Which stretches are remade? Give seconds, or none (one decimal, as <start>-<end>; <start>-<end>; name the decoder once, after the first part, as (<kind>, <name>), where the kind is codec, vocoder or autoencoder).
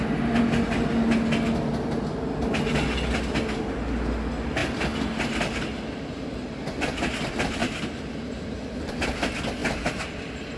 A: 7.6-8.9 (vocoder, BigVGAN v2); 9.6-10.2